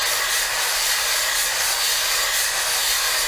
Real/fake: fake